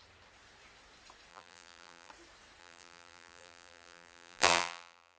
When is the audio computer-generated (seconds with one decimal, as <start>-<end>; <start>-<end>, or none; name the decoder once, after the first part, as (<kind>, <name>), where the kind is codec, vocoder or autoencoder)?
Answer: 1.3-2.1 (vocoder, BigVGAN v2); 2.6-5.2